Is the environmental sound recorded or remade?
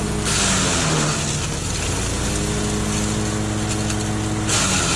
recorded